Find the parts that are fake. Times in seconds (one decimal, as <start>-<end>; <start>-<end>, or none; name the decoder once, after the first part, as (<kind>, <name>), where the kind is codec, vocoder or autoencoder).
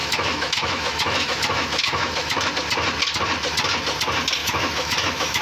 0.0-2.5 (autoencoder, DAC-VAE); 4.4-5.4